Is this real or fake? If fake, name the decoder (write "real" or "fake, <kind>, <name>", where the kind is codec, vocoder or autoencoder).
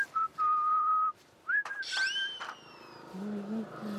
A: fake, vocoder, BigVGAN v2